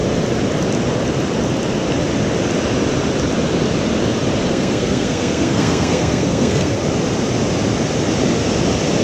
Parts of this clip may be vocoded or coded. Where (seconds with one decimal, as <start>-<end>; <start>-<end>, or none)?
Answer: 4.5-6.8